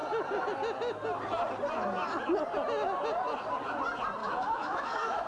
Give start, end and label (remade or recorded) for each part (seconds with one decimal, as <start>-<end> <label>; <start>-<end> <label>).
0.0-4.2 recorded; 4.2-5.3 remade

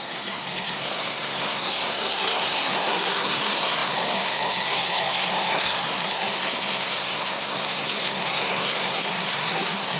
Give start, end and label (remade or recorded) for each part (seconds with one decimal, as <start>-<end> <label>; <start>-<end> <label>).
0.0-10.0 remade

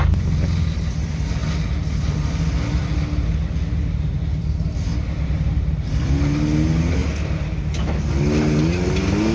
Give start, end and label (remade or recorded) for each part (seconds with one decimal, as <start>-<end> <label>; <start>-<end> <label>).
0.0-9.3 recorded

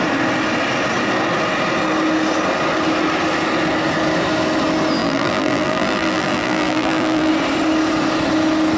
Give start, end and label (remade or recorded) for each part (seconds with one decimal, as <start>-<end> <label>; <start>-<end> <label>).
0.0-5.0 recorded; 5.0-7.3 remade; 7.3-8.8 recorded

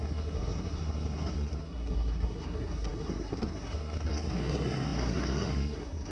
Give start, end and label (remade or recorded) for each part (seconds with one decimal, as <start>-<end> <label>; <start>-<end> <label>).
0.0-6.1 remade

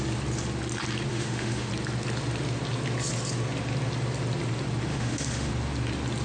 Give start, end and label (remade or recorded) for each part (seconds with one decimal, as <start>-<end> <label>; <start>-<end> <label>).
0.0-1.1 recorded; 1.1-1.7 remade; 1.7-4.9 recorded; 4.9-5.5 remade; 5.5-6.2 recorded